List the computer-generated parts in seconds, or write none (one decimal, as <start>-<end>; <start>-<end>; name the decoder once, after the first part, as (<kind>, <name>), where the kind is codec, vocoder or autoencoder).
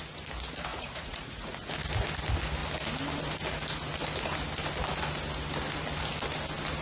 0.7-1.7 (vocoder, Vocos)